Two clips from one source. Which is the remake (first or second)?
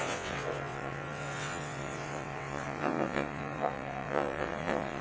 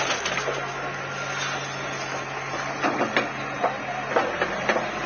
first